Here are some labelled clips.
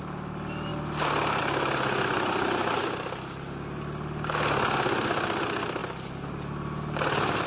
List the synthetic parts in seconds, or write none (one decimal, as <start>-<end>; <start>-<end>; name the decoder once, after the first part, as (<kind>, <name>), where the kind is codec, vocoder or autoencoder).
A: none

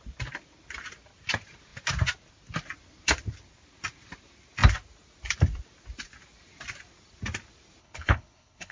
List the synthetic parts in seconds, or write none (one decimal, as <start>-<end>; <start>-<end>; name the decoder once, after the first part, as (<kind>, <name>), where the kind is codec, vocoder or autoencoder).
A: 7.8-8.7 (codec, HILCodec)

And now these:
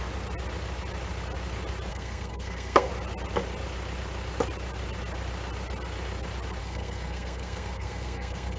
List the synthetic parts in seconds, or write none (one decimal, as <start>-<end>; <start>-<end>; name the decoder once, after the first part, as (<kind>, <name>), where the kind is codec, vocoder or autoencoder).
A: 1.9-2.9 (codec, SNAC); 6.6-8.6

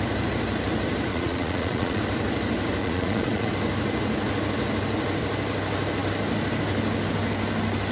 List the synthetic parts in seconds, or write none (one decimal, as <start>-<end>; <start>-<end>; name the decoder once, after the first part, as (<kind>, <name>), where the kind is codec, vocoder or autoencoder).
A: 1.1-2.0 (vocoder, Vocos); 2.8-3.5